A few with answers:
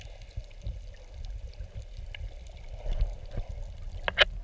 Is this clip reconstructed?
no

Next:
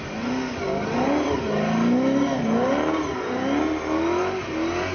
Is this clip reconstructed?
no